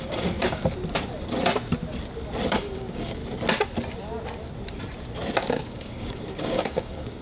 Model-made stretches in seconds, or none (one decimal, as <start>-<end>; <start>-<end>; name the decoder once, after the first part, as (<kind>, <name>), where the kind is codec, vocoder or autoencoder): 0.0-0.6 (codec, DAC); 2.5-3.2; 5.5-7.2